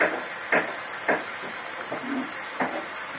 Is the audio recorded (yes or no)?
yes